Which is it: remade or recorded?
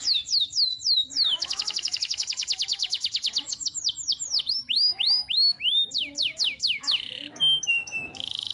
remade